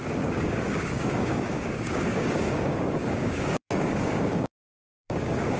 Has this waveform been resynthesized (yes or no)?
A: yes